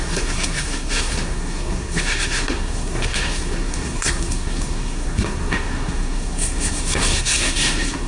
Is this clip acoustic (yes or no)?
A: no